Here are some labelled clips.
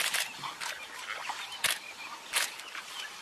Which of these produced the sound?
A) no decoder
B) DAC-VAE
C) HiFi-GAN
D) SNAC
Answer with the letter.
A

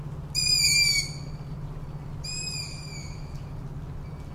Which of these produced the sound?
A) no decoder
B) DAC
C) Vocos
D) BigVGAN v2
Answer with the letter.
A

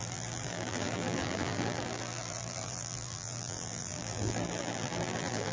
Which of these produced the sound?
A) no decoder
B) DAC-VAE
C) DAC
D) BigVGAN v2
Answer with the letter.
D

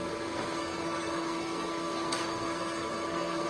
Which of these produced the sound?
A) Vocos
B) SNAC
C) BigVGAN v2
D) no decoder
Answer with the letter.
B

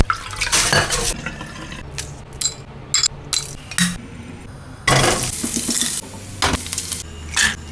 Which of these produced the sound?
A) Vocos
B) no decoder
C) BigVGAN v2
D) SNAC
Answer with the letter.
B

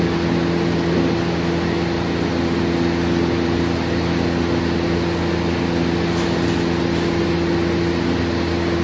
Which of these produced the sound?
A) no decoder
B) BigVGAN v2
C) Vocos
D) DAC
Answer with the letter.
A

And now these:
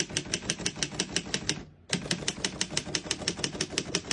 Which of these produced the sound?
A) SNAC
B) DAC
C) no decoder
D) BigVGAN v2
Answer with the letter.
C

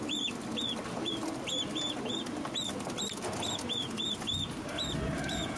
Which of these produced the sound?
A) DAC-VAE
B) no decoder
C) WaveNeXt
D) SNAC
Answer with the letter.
B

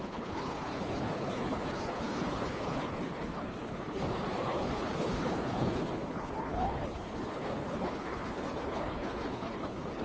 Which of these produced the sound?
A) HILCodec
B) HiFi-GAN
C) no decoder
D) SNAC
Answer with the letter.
A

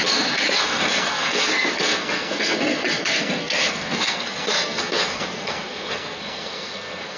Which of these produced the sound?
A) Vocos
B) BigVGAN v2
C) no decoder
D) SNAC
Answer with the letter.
D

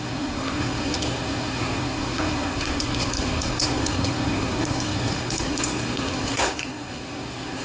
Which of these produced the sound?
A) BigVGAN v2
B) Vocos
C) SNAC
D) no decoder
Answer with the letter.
C